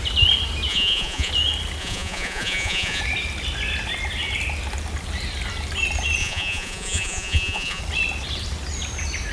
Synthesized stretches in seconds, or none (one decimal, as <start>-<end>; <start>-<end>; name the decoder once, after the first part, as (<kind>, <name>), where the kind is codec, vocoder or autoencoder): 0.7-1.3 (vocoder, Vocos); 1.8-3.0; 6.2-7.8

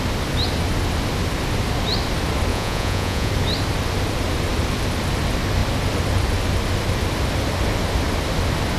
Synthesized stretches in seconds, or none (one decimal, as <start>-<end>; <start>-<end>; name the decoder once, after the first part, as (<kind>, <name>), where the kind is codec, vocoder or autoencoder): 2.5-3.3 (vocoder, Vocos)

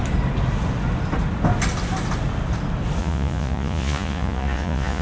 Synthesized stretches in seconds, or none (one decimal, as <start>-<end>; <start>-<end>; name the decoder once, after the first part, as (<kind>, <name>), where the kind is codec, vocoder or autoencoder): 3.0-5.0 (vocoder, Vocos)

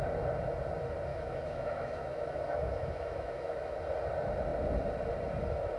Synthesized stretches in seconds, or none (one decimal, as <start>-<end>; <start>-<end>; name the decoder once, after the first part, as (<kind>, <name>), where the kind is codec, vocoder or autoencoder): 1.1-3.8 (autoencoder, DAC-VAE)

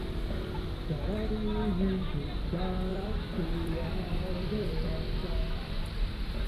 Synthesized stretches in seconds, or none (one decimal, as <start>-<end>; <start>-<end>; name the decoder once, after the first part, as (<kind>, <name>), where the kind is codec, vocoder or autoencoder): 2.9-6.5 (vocoder, BigVGAN v2)